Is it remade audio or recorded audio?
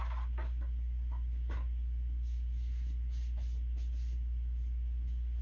recorded